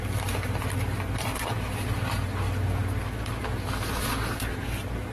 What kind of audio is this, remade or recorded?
recorded